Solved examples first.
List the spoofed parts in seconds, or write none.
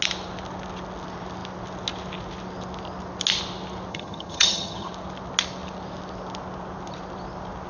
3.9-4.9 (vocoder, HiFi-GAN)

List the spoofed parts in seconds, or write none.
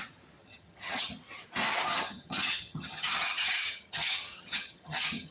0.4-1.1 (vocoder, HiFi-GAN); 1.7-5.3